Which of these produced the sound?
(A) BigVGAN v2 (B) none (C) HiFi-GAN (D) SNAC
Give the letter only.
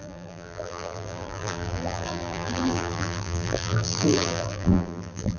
A